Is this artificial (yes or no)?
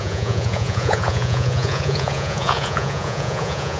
yes